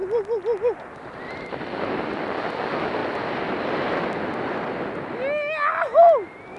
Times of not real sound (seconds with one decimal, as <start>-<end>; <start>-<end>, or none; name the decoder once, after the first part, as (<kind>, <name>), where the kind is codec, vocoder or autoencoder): none